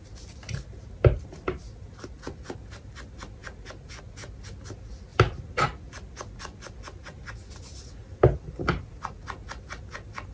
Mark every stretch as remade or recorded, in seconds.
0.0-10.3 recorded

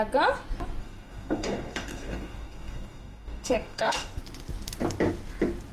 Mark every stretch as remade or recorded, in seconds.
0.0-0.8 recorded; 0.8-4.2 remade; 4.2-5.7 recorded

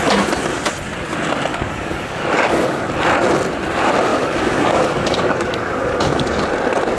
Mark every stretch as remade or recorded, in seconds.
0.0-1.5 recorded; 1.5-2.9 remade; 2.9-4.1 recorded; 4.1-6.4 remade; 6.4-7.0 recorded